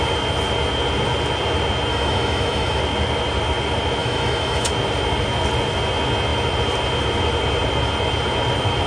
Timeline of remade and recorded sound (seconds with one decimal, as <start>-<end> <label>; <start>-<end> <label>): 0.0-1.9 recorded; 1.9-2.8 remade; 2.8-4.0 recorded; 4.0-4.7 remade; 4.7-8.9 recorded